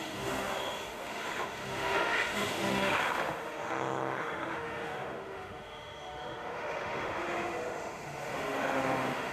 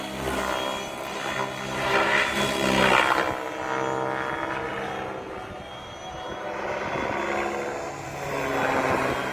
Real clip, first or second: second